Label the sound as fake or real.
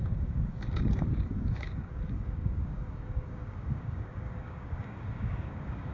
fake